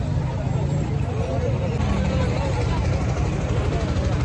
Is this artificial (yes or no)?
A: no